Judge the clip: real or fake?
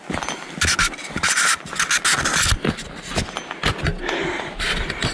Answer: real